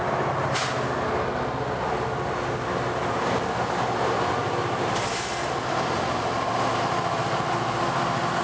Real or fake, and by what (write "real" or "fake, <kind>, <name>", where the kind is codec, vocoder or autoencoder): real